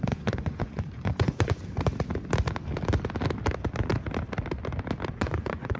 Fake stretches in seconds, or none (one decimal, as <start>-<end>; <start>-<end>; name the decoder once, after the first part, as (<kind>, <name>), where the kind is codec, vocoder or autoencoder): 0.0-1.6 (vocoder, Vocos); 5.1-5.8